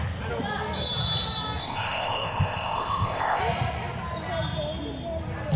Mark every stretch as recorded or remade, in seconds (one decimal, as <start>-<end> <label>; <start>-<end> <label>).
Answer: 0.0-1.6 recorded; 1.6-3.4 remade; 3.4-5.6 recorded